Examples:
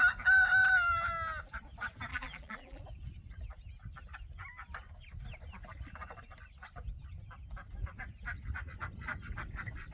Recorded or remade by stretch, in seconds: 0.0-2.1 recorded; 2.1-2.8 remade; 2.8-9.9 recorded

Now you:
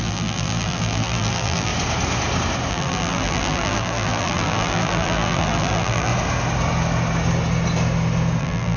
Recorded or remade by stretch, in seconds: 0.0-1.7 remade; 1.7-2.7 recorded; 2.7-6.1 remade; 6.1-8.4 recorded; 8.4-8.8 remade